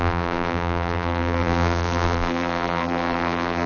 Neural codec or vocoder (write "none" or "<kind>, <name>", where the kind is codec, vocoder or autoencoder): vocoder, BigVGAN v2